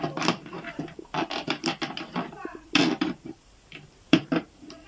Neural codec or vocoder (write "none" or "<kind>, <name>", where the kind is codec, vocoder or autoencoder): vocoder, BigVGAN v2